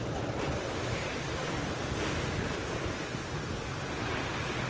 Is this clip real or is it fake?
real